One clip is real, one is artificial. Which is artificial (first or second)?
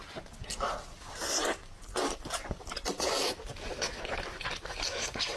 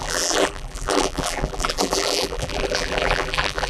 second